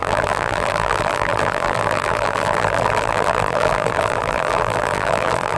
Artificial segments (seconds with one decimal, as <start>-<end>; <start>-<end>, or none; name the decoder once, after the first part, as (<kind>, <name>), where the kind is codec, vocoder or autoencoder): 0.0-5.6 (vocoder, BigVGAN v2)

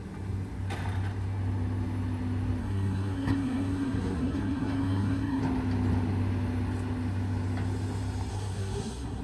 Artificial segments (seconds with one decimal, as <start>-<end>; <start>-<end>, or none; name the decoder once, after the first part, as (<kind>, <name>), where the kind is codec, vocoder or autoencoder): 2.6-5.4 (codec, SNAC); 8.3-9.2

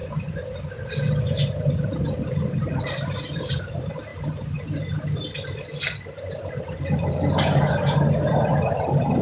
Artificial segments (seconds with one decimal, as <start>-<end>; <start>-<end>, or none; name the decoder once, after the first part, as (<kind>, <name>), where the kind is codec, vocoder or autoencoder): none

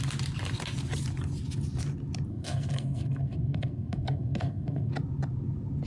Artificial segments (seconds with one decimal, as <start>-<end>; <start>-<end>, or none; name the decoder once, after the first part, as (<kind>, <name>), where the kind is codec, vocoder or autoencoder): 2.3-4.9 (codec, SNAC)

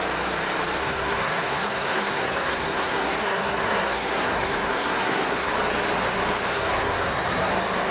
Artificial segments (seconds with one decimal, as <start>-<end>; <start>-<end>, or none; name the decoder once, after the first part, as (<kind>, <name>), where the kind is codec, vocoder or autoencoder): 0.8-5.5 (codec, SNAC); 6.5-7.5

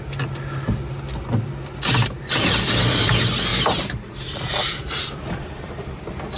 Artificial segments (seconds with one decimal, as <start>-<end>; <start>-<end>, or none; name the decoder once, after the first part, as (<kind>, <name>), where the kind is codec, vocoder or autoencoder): 3.5-6.0 (vocoder, BigVGAN v2)

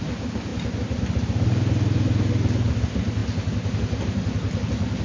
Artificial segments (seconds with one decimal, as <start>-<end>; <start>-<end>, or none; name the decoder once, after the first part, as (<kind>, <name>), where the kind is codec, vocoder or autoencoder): none